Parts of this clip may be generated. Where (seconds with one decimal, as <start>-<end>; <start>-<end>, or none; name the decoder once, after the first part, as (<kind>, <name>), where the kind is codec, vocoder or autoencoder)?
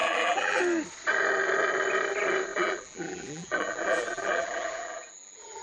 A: 0.0-0.6 (vocoder, BigVGAN v2); 2.5-5.6